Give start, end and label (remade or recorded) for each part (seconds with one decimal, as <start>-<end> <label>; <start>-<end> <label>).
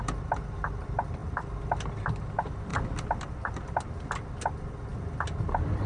0.0-1.2 recorded; 1.2-2.3 remade; 2.3-2.7 recorded; 2.7-3.6 remade; 3.6-5.9 recorded